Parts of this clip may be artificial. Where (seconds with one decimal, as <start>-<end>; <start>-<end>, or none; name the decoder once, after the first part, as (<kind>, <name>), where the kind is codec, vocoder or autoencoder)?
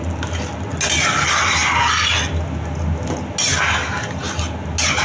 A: none